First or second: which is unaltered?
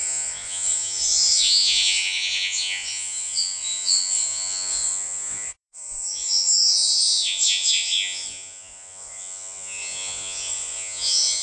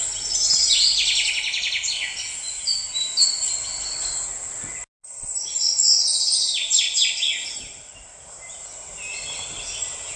second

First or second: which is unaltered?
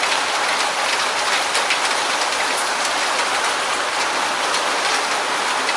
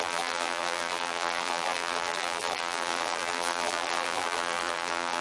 first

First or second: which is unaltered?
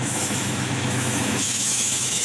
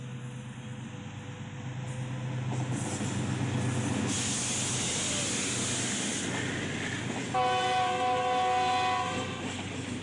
second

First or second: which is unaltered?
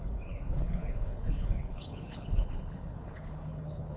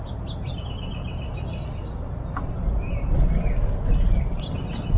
second